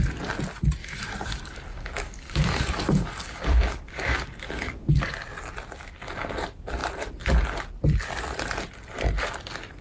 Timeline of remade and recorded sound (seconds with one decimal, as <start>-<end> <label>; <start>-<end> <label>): 0.0-0.8 recorded; 0.8-4.9 remade; 4.9-9.8 recorded